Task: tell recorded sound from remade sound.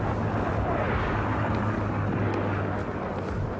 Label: recorded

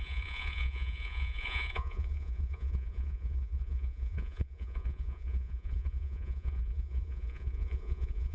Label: remade